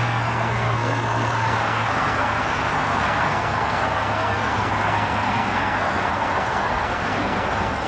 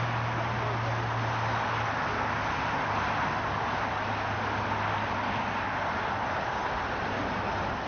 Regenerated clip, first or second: first